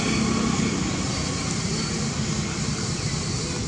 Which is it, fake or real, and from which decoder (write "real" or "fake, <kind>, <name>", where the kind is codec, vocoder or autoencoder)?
real